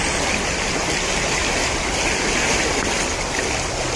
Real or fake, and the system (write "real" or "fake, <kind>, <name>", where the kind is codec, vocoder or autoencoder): real